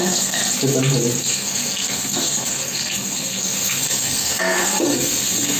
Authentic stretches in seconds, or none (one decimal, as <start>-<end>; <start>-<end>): 0.4-1.2